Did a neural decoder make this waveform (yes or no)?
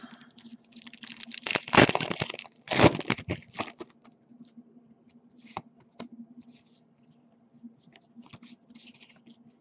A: no